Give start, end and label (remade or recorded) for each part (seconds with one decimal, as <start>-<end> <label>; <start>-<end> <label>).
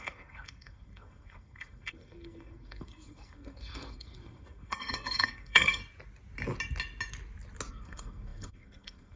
0.0-5.8 remade; 5.8-7.7 recorded; 7.7-9.2 remade